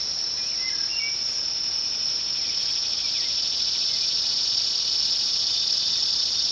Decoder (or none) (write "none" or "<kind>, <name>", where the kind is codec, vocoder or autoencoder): none